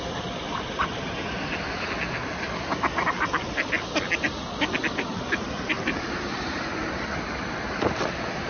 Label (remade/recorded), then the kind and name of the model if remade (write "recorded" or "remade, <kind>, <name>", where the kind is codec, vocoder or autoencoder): recorded